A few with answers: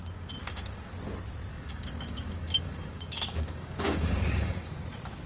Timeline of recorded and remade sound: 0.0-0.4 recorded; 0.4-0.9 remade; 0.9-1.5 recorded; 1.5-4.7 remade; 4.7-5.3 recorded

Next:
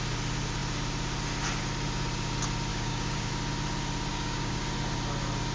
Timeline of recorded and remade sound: 0.0-2.7 recorded; 2.7-3.3 remade; 3.3-4.1 recorded; 4.1-4.6 remade; 4.6-5.5 recorded